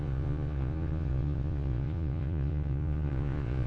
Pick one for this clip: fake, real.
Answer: fake